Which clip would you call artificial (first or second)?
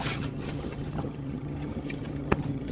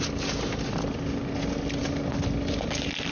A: first